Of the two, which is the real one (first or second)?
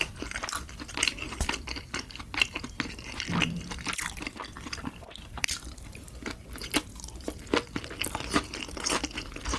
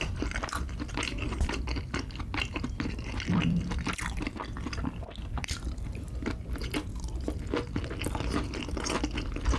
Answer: second